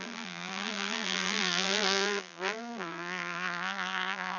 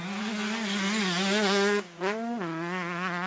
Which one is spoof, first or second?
first